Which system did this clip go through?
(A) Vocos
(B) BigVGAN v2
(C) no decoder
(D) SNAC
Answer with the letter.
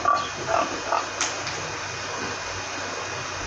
C